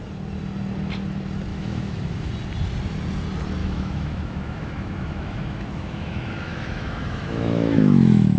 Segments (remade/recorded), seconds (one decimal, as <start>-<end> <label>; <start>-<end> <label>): 0.0-1.5 recorded; 1.5-2.3 remade; 2.3-3.6 recorded; 3.6-8.4 remade